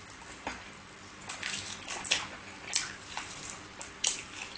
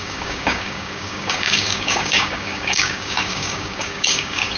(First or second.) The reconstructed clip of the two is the second